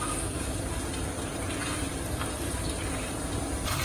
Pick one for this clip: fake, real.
real